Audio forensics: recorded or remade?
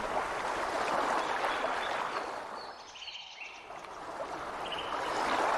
recorded